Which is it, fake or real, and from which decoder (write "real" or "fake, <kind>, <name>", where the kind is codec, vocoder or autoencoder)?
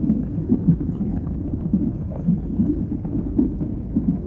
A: fake, codec, SNAC